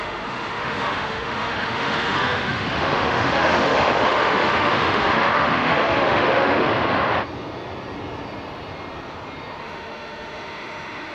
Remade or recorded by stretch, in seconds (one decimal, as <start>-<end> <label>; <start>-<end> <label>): 0.0-6.7 remade; 6.7-9.6 recorded; 9.6-11.1 remade